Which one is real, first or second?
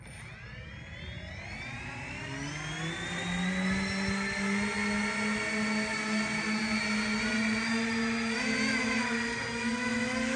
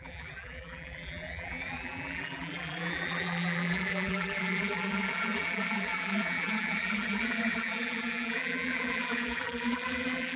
first